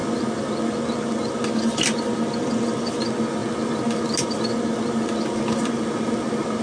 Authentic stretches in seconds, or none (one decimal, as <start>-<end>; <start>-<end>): 0.0-6.6